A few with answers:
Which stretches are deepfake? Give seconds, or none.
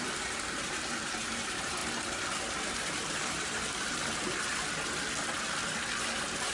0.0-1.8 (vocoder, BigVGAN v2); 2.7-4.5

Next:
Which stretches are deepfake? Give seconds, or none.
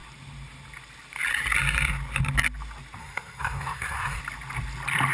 3.0-4.2 (codec, SNAC)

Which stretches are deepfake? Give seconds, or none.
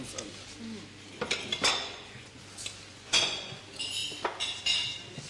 1.8-2.4 (vocoder, Vocos); 2.9-3.6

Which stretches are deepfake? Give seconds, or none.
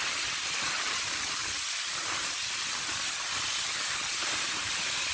0.7-1.4 (vocoder, BigVGAN v2); 4.5-5.1